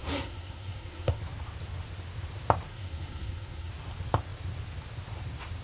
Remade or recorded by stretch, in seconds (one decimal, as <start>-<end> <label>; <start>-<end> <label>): 0.0-1.2 remade; 1.2-2.7 recorded; 2.7-3.7 remade; 3.7-5.6 recorded